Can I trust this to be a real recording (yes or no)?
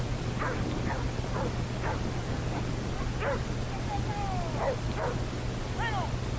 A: yes